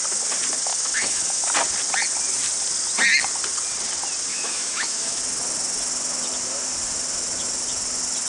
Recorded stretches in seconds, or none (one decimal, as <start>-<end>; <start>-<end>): 0.0-0.7; 1.4-4.3; 5.2-8.3